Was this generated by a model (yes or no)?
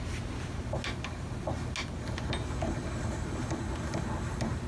no